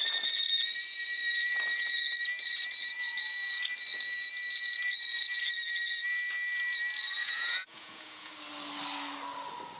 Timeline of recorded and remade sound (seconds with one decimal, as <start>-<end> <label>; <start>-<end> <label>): 0.0-7.2 recorded; 7.2-8.3 remade; 8.3-9.8 recorded